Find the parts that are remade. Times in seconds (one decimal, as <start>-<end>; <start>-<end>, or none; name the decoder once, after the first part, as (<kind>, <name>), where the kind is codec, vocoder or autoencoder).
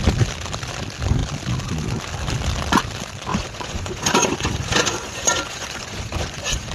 3.3-6.7 (vocoder, Vocos)